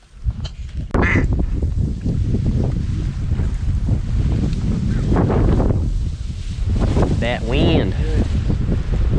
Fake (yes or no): no